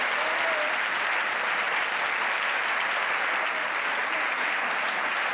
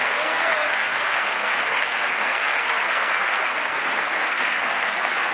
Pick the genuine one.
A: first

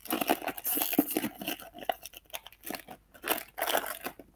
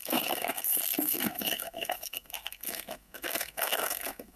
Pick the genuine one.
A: first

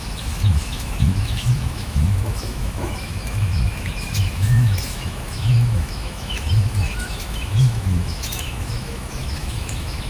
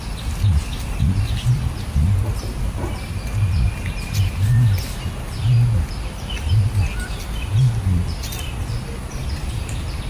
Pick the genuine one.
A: second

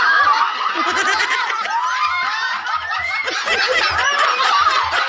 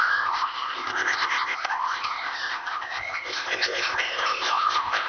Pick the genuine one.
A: first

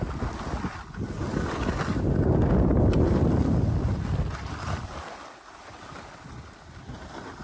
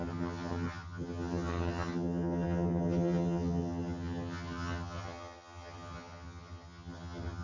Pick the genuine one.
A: first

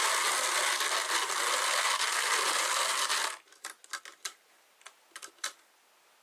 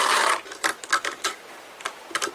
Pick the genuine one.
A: first